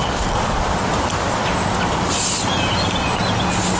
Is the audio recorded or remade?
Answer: recorded